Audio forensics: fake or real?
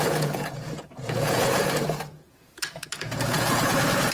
fake